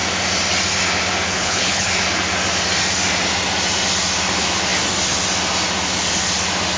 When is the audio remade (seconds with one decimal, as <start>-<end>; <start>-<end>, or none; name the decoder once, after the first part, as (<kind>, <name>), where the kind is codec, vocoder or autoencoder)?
1.3-1.9 (codec, HILCodec)